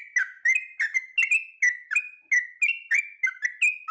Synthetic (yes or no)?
no